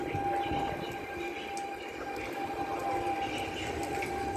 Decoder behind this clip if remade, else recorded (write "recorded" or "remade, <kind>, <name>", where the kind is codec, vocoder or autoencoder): recorded